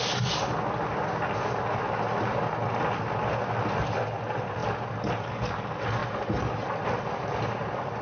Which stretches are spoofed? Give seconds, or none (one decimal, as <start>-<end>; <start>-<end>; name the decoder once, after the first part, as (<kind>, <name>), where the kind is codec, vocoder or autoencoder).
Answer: none